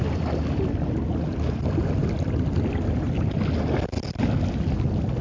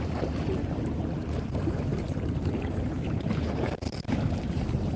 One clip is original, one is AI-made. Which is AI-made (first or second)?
second